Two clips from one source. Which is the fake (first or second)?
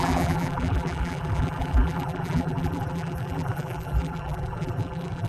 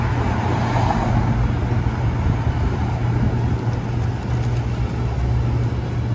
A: first